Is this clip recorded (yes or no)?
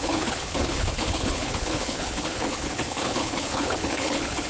no